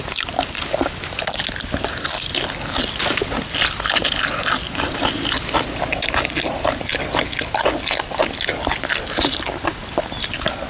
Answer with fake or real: real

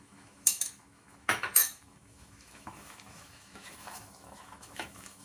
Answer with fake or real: fake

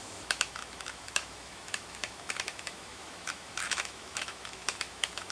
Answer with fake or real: fake